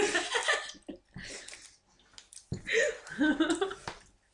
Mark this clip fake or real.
real